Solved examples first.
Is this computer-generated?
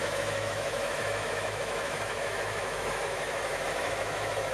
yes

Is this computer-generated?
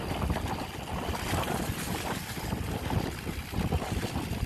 no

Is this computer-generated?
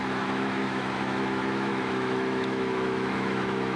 yes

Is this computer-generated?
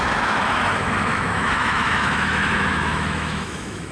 yes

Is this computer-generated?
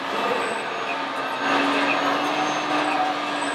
no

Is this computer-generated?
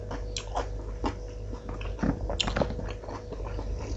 no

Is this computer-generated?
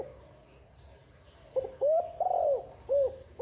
no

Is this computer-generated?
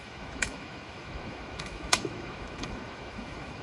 yes